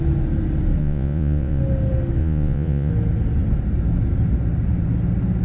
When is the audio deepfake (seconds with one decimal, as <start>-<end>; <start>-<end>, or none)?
0.8-1.6; 2.2-2.9